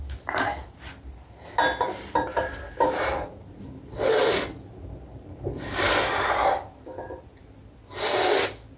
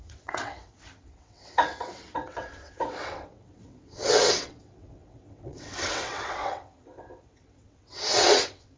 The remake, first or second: second